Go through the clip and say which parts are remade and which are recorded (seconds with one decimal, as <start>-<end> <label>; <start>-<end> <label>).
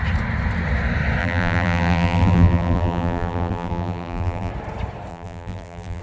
0.0-1.2 recorded; 1.2-4.5 remade; 4.5-5.1 recorded; 5.1-6.0 remade